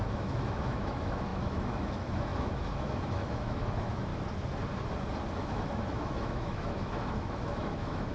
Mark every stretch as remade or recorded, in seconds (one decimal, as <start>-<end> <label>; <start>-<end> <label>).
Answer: 0.0-4.1 remade; 4.1-5.4 recorded; 5.4-8.1 remade